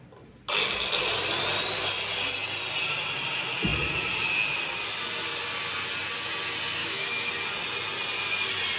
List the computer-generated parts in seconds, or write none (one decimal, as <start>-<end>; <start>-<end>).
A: 6.8-7.3